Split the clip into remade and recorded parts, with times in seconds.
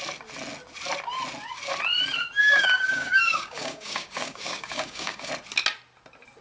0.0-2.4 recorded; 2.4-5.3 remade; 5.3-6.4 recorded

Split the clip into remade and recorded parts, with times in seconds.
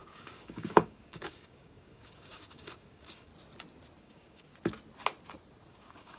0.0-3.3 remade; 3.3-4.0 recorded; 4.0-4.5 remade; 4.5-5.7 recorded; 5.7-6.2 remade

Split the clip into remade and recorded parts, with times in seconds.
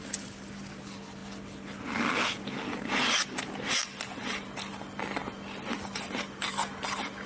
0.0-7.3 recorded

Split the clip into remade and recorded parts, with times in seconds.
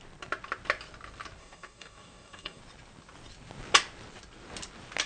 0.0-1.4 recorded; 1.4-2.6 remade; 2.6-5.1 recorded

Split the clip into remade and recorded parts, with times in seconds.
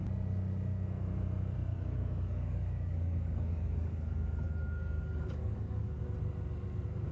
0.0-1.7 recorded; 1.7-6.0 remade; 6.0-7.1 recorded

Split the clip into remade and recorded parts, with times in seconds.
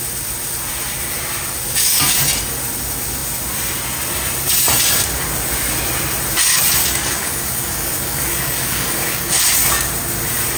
0.0-1.6 recorded; 1.6-2.2 remade; 2.2-6.8 recorded; 6.8-9.3 remade; 9.3-10.6 recorded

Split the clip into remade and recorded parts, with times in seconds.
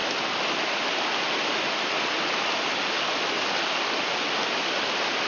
0.0-5.3 recorded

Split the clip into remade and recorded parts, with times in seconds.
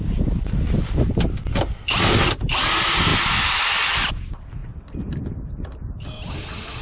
0.0-6.8 recorded